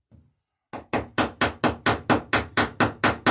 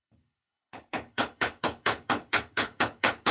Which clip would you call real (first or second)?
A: first